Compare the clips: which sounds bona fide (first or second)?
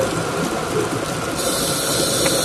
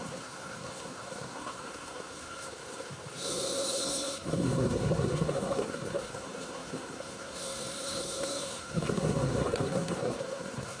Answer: first